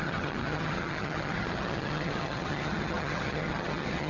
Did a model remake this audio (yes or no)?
yes